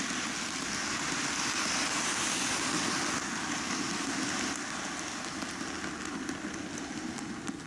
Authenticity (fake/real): real